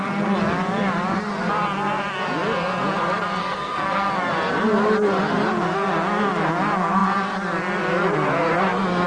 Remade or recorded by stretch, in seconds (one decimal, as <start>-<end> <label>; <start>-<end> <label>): 0.0-3.4 recorded; 3.4-4.1 remade; 4.1-9.1 recorded